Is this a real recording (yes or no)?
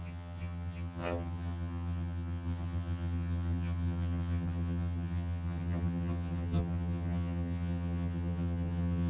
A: no